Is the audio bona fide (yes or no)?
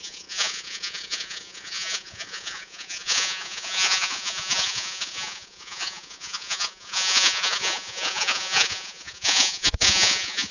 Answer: no